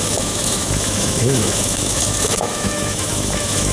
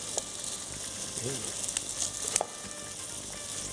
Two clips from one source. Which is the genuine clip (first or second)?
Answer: second